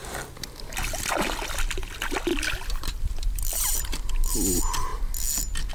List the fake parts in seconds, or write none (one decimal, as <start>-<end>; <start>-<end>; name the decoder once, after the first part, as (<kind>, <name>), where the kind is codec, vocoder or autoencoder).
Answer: 0.9-4.9 (vocoder, BigVGAN v2)

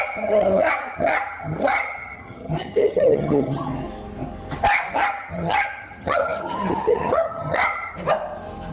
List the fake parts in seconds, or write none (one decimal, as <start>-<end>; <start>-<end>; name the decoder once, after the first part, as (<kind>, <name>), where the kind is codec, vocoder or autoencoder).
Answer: 0.0-3.7 (vocoder, HiFi-GAN); 4.9-7.9